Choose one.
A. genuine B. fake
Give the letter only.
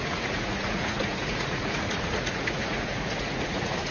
B